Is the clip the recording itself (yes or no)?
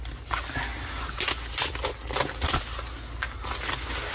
yes